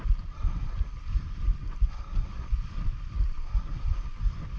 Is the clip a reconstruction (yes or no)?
no